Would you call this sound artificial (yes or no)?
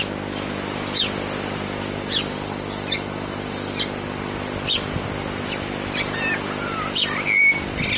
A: no